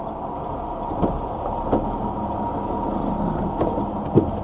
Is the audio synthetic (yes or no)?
no